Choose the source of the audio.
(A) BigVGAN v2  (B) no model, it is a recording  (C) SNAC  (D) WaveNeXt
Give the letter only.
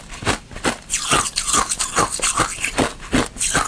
B